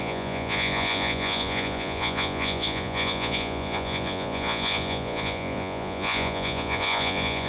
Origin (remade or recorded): remade